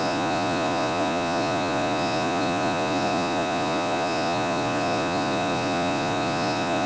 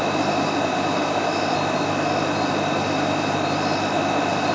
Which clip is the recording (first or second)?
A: second